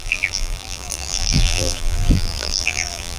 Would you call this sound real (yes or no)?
no